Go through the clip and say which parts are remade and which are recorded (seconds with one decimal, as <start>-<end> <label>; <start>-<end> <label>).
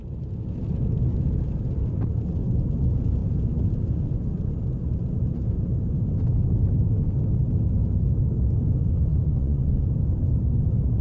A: 0.0-9.1 recorded; 9.1-9.8 remade; 9.8-11.0 recorded